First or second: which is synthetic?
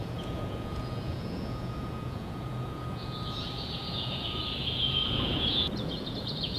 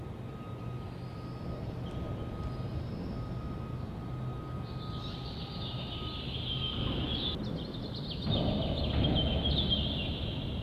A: first